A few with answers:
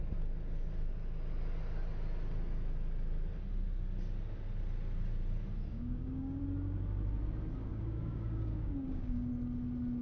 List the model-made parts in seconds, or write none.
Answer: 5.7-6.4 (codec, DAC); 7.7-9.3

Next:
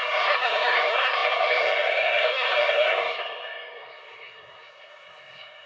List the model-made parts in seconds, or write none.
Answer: 0.0-5.7 (codec, SNAC)

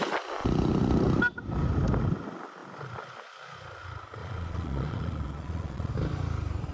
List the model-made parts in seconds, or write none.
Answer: 4.2-5.9 (vocoder, Vocos)

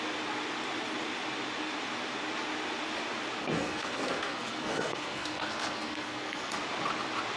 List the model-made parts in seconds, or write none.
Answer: 3.4-6.6 (codec, SNAC)

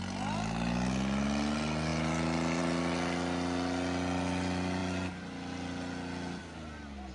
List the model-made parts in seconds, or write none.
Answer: none

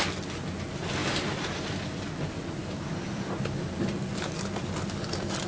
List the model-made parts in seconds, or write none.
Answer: 1.0-1.6 (vocoder, BigVGAN v2); 2.6-3.7

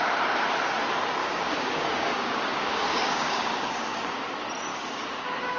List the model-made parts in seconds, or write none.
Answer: 1.2-4.2 (codec, DAC); 4.7-5.6

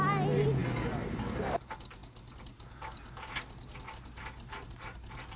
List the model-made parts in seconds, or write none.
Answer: none